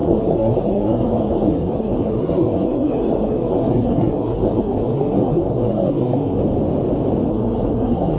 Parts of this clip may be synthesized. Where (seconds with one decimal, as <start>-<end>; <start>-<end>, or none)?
0.0-6.4; 7.3-8.2